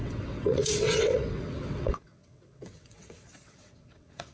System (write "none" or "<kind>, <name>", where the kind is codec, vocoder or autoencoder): vocoder, WaveNeXt